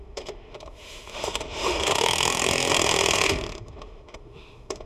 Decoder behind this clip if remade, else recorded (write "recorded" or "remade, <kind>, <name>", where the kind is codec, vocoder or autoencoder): remade, autoencoder, DAC-VAE